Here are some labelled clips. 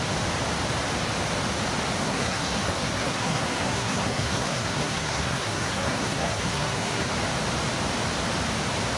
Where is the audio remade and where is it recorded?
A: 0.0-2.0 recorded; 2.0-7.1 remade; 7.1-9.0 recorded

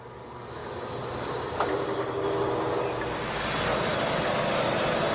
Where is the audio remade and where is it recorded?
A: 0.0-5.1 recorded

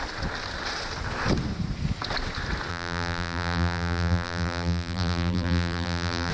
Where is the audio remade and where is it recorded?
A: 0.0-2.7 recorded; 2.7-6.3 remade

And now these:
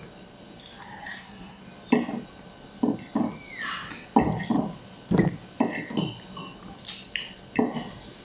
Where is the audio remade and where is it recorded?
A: 0.0-1.0 recorded; 1.0-1.6 remade; 1.6-8.2 recorded

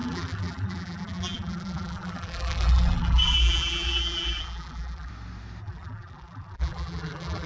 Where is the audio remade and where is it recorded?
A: 0.0-5.1 remade; 5.1-5.6 recorded; 5.6-7.5 remade